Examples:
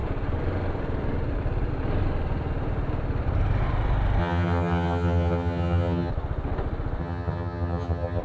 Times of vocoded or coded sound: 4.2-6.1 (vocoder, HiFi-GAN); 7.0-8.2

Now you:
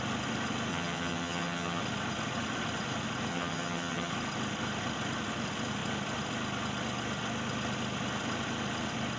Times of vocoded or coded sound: 0.7-1.8 (vocoder, HiFi-GAN); 3.3-4.1

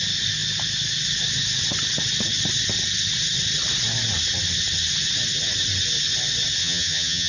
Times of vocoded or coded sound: 6.6-7.3 (vocoder, HiFi-GAN)

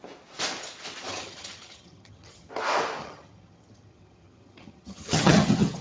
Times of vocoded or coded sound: 1.1-2.5 (vocoder, HiFi-GAN); 3.0-5.8